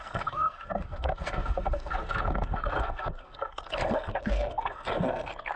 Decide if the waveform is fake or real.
fake